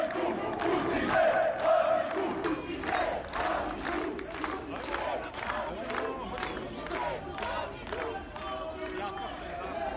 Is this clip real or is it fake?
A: real